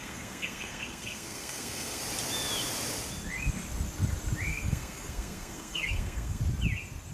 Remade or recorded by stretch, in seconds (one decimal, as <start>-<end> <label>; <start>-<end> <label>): 0.0-2.0 remade; 2.0-4.5 recorded; 4.5-6.4 remade; 6.4-7.1 recorded